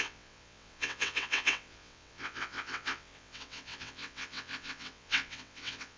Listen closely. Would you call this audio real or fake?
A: fake